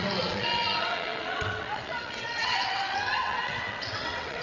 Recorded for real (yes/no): no